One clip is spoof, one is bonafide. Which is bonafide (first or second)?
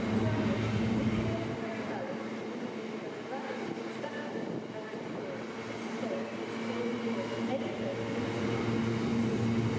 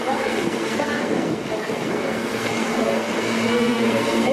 first